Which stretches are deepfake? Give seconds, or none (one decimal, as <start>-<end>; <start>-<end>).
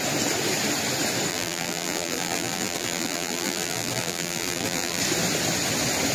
1.3-5.0